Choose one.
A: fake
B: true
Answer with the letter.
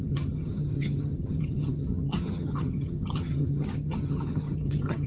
A